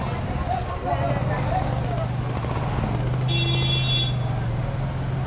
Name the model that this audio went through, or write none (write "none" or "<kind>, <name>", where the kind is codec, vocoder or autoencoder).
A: none